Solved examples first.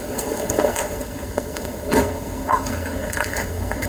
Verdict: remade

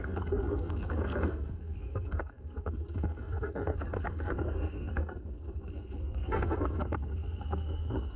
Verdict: remade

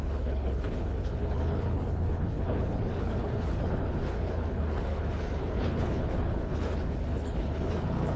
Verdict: remade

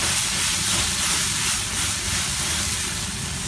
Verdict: recorded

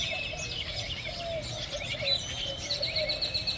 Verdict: recorded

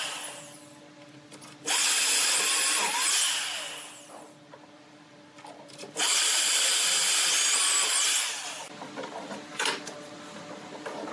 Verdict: recorded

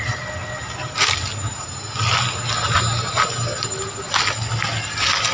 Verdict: recorded